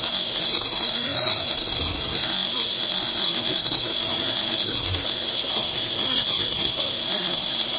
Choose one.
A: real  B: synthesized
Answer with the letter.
B